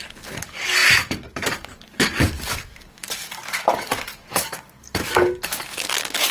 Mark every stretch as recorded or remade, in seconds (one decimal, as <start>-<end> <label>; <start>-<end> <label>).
0.0-6.3 remade